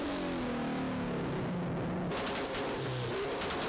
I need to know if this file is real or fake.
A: real